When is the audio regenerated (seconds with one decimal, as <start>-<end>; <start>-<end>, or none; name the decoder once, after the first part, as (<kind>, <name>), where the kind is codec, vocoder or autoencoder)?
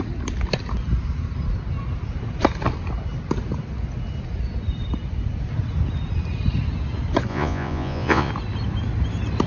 7.3-8.3 (vocoder, Vocos)